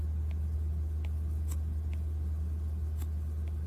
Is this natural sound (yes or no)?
yes